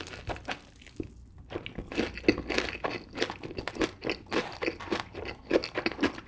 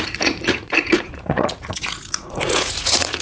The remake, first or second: second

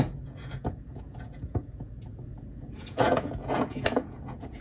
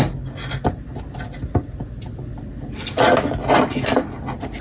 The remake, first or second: first